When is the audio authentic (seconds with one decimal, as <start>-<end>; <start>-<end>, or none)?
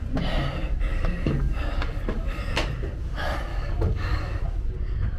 0.0-0.9; 2.4-3.5; 4.4-5.2